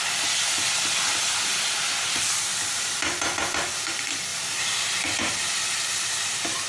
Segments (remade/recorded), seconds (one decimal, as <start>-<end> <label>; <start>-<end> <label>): 0.0-4.3 recorded; 4.3-5.5 remade; 5.5-6.7 recorded